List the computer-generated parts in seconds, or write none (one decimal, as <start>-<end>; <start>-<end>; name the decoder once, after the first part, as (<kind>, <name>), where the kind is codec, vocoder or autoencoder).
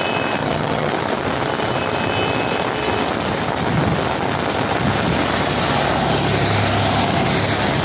0.4-0.9 (vocoder, HiFi-GAN)